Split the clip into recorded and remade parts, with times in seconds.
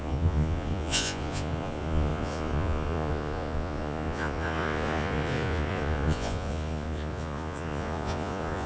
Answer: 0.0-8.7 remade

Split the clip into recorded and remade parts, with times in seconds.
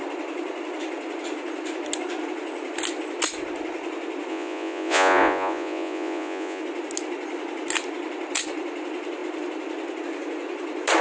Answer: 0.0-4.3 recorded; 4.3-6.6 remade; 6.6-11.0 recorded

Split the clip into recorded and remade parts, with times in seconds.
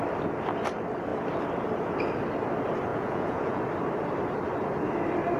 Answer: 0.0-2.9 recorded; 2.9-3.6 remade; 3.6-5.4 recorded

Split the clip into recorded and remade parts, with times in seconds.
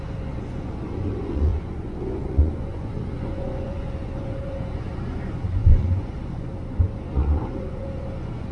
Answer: 0.0-8.5 remade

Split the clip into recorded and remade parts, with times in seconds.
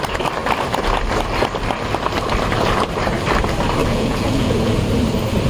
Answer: 0.0-3.8 recorded; 3.8-4.9 remade; 4.9-5.5 recorded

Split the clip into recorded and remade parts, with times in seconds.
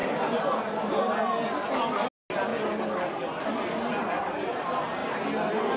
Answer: 0.0-5.8 recorded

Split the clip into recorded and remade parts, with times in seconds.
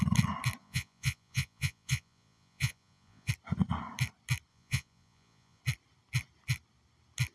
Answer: 0.0-0.6 recorded; 0.6-3.3 remade; 3.3-4.5 recorded; 4.5-5.6 remade; 5.6-7.3 recorded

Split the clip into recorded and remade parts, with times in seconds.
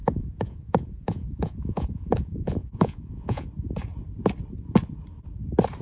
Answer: 0.0-3.5 remade; 3.5-5.8 recorded